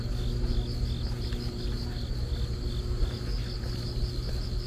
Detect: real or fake real